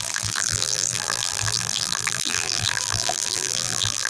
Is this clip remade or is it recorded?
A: remade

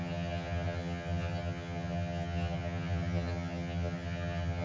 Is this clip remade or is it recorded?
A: remade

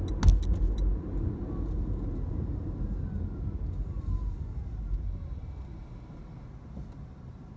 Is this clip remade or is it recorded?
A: recorded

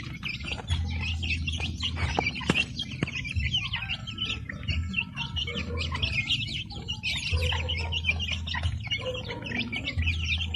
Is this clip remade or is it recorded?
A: recorded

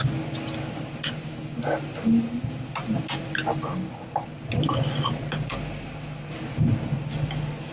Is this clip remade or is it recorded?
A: recorded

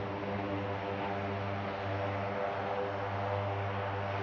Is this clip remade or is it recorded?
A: recorded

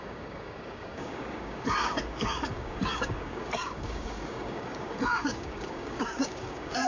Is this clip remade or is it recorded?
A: remade